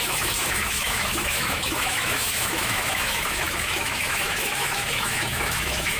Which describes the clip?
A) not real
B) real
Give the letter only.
A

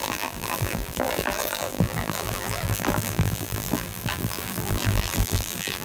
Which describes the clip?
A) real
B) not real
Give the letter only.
B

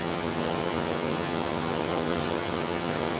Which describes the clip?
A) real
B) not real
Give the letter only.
B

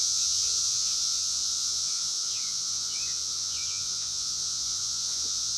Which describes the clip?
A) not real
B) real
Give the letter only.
A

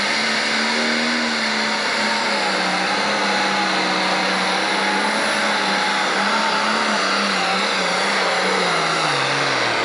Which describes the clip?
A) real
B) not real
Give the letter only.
A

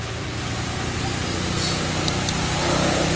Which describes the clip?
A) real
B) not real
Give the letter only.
A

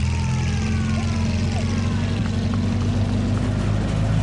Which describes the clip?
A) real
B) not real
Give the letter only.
A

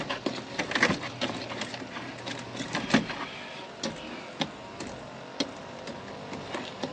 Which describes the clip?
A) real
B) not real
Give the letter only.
A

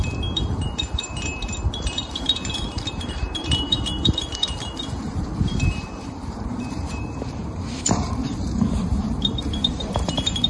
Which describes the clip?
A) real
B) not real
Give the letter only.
B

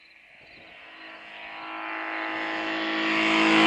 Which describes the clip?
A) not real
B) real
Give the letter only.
B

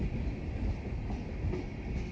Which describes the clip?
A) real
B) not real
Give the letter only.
A